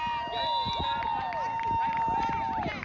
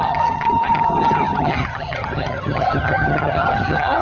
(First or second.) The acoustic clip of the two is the first